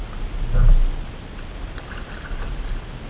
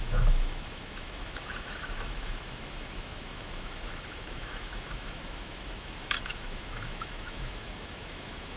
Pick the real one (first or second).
first